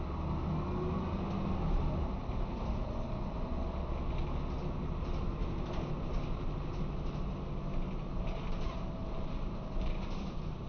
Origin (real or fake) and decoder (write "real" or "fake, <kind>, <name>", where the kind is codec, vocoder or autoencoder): real